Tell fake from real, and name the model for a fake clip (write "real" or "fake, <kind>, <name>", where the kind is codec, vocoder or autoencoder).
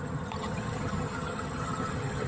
fake, vocoder, HiFi-GAN